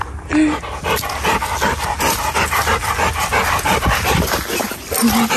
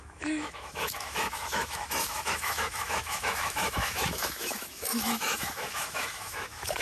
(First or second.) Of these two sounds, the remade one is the second